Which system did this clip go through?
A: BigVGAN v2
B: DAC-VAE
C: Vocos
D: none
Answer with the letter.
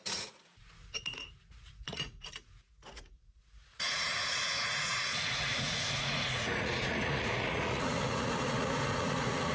C